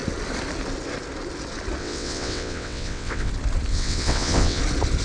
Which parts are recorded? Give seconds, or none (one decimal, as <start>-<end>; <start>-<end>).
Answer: 0.0-1.8; 3.3-3.7; 4.6-5.0